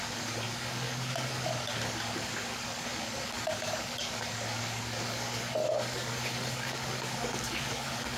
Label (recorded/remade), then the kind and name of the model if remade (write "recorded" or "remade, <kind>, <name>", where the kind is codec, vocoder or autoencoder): remade, codec, DAC